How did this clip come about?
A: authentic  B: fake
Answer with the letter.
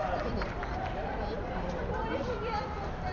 A